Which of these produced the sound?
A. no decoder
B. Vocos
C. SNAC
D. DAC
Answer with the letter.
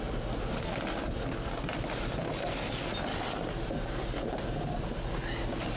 A